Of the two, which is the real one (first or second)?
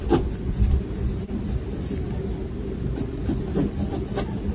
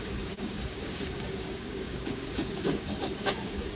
first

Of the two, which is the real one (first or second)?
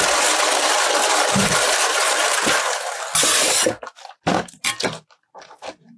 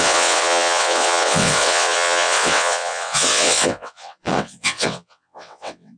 first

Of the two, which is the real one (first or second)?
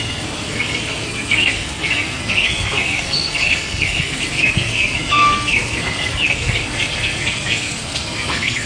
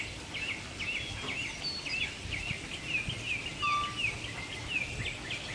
second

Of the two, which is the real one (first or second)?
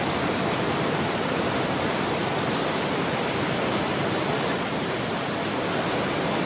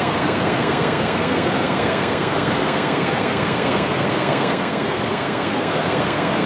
first